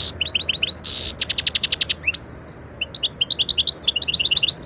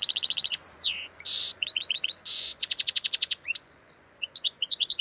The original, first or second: first